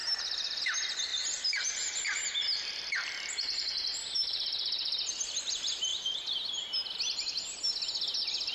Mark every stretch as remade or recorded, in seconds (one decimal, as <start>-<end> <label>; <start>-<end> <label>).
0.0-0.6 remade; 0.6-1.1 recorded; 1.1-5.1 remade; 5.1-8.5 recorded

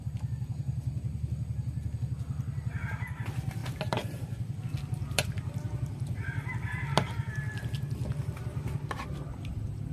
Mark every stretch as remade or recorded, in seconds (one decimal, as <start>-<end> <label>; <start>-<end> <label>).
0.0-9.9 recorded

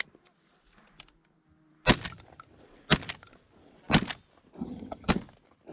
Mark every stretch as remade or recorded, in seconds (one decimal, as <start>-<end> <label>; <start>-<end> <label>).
0.0-4.6 recorded; 4.6-5.1 remade; 5.1-5.7 recorded

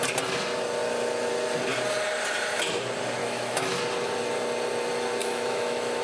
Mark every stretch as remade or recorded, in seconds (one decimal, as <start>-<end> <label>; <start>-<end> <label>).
0.0-3.2 recorded; 3.2-3.8 remade; 3.8-5.2 recorded; 5.2-6.0 remade